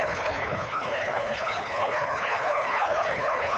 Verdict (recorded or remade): remade